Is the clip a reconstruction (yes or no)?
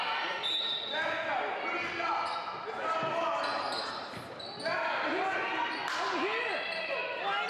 no